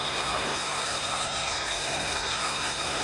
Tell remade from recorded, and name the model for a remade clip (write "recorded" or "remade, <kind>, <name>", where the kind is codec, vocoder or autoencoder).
remade, codec, SNAC